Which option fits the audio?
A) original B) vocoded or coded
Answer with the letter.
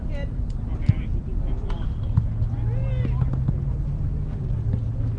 A